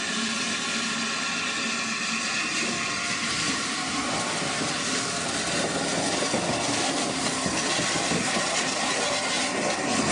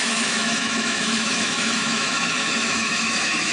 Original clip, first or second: first